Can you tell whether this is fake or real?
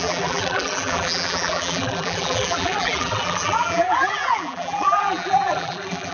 fake